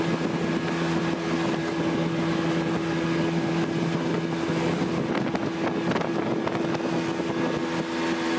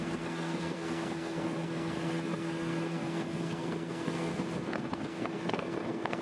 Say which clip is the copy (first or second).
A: second